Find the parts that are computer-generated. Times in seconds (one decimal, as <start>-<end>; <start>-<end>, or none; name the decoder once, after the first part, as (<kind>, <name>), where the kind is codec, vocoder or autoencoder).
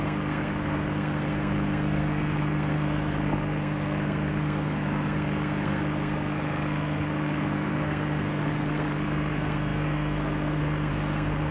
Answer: 0.0-11.5 (codec, SNAC)